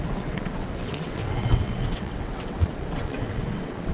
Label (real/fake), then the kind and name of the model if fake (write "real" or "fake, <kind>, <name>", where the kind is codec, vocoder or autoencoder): fake, vocoder, WaveNeXt